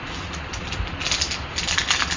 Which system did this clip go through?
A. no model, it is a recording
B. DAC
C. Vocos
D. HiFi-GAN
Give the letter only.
A